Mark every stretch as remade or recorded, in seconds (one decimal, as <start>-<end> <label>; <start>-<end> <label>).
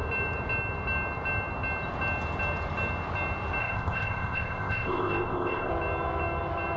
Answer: 0.0-3.6 recorded; 3.6-5.7 remade; 5.7-6.8 recorded